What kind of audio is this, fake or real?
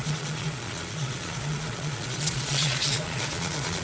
fake